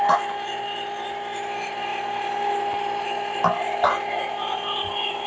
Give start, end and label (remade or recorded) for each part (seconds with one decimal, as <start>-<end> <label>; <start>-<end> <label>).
0.0-5.3 recorded